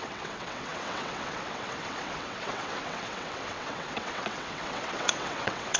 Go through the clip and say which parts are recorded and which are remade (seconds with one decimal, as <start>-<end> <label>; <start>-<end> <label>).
0.0-5.8 remade